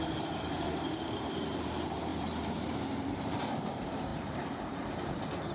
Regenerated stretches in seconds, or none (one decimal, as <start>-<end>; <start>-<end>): 0.0-5.5